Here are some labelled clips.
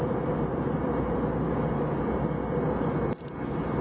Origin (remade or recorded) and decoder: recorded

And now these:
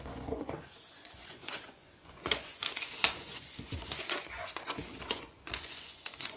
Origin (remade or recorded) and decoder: remade, vocoder, Vocos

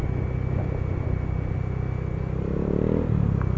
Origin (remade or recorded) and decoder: recorded